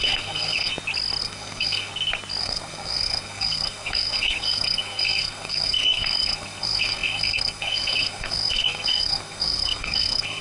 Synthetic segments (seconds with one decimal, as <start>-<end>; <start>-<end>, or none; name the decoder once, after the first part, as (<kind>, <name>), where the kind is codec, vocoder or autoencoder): 0.0-0.7 (codec, SNAC); 1.2-1.9; 2.4-10.4